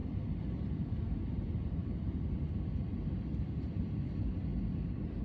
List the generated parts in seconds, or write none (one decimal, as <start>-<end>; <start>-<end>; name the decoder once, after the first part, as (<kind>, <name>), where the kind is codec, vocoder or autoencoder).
none